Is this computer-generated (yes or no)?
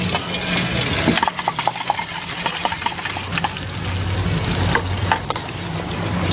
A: no